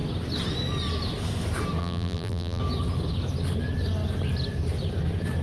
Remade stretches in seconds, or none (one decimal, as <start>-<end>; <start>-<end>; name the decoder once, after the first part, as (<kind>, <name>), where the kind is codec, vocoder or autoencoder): 1.8-2.6 (vocoder, BigVGAN v2)